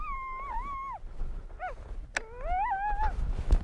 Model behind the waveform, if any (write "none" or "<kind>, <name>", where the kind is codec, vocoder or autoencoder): none